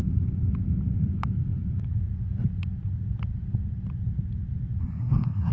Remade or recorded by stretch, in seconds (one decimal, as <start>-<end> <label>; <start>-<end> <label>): 0.0-4.8 recorded; 4.8-5.5 remade